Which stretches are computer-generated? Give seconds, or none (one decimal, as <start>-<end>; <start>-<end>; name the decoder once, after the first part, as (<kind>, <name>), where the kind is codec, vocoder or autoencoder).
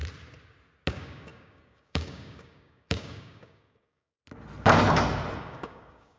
0.9-4.2 (codec, DAC); 5.4-6.2